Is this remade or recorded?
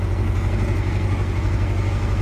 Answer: remade